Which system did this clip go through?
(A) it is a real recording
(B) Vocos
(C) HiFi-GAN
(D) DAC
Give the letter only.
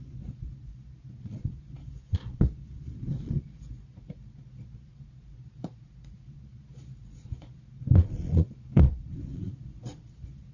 B